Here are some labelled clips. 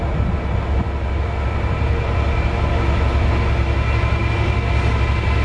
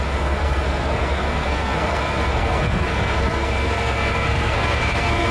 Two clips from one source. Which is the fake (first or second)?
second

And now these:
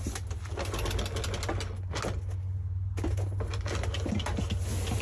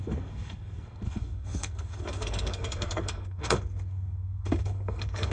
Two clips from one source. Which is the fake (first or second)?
second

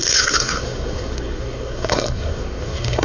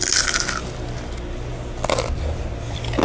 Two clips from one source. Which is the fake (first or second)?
first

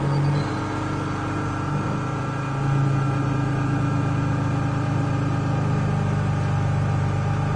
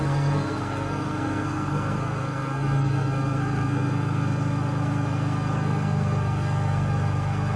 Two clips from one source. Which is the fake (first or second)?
second